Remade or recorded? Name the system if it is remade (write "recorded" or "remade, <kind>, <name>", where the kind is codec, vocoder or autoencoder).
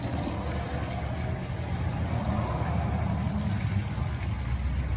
recorded